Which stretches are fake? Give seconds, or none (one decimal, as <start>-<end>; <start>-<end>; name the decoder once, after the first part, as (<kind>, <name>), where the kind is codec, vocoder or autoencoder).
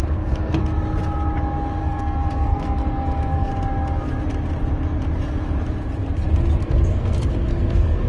0.0-0.6 (codec, SNAC); 1.8-3.5; 6.6-8.1